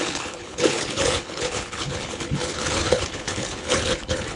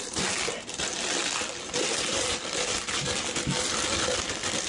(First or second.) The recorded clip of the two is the second